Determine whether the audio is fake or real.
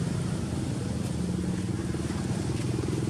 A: real